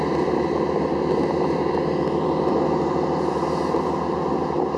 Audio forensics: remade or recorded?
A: recorded